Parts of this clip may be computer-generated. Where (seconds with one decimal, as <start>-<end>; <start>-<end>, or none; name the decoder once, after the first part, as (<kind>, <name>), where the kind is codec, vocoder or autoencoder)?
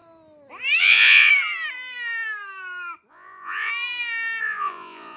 0.8-1.3 (vocoder, Vocos); 3.1-3.7; 4.4-5.2